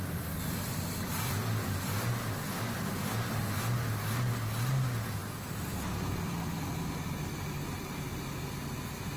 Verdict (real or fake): real